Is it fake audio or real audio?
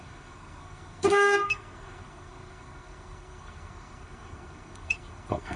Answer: fake